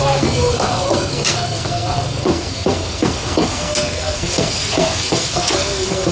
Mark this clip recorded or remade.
remade